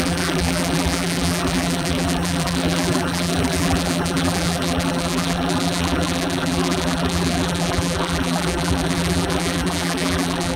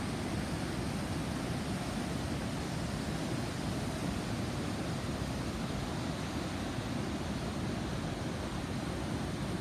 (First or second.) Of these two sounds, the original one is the second